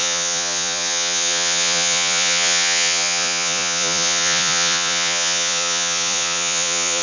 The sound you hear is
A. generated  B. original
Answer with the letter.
A